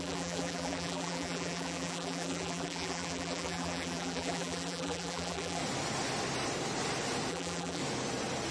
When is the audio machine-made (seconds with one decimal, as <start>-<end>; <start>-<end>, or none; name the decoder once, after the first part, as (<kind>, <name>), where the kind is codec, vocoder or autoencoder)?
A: 0.0-5.6 (vocoder, BigVGAN v2); 7.3-7.8